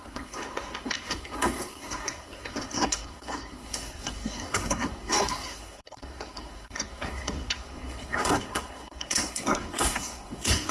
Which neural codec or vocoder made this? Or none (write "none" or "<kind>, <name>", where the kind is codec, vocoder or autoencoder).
codec, SNAC